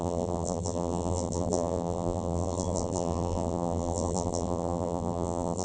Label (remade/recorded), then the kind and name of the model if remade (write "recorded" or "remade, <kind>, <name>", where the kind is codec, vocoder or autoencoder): remade, vocoder, BigVGAN v2